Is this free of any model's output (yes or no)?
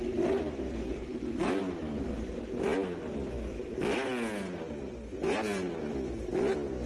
yes